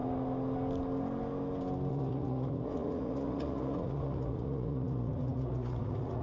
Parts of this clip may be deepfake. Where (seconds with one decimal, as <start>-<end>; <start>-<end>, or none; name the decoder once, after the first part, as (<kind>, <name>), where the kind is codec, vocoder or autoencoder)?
1.9-6.2 (vocoder, Vocos)